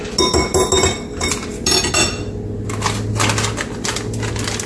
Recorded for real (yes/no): yes